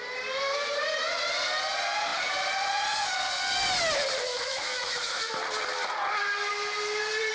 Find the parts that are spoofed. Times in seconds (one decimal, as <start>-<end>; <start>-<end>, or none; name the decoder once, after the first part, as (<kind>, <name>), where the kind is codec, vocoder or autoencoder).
4.3-5.2 (autoencoder, DAC-VAE)